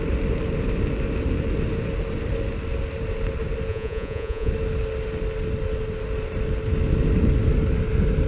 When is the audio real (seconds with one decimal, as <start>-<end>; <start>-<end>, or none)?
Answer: 0.0-3.7; 4.5-8.3